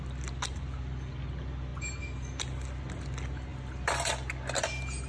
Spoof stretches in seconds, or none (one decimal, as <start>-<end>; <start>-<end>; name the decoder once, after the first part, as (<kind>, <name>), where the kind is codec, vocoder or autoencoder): none